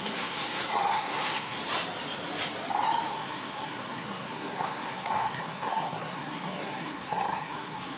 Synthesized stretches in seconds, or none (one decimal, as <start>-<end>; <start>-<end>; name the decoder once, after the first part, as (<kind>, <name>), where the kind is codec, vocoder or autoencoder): 0.0-1.6 (codec, SNAC); 3.1-8.0